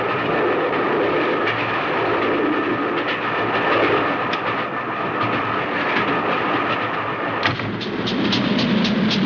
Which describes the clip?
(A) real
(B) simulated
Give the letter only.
A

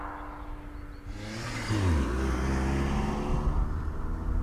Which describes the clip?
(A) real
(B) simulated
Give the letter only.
A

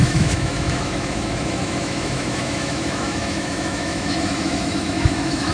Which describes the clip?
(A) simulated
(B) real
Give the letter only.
A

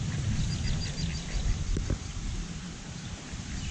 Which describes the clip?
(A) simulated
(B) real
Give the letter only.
B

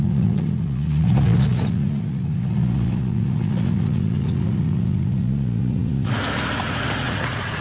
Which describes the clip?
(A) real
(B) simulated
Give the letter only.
B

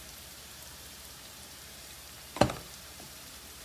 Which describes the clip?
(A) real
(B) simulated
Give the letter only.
B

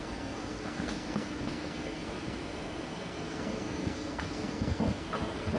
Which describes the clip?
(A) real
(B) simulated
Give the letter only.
B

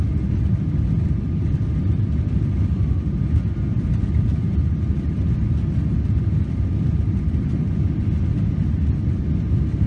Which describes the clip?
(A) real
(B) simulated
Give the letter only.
A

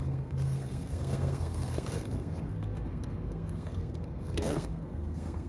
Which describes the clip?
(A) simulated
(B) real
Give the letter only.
A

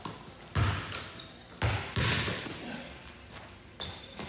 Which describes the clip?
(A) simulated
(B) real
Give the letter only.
B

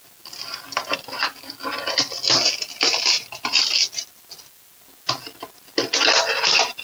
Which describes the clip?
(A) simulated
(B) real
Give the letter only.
B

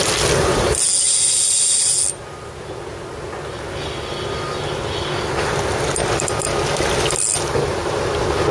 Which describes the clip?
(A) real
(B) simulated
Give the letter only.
A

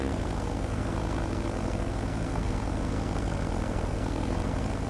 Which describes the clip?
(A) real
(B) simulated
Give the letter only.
B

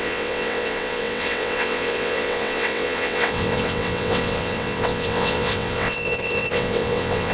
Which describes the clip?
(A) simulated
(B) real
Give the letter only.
A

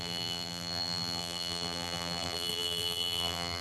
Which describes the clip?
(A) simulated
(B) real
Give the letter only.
A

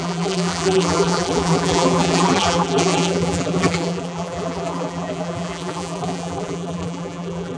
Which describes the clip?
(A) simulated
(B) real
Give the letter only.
A